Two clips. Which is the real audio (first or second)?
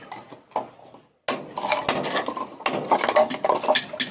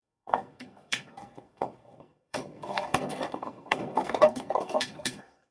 first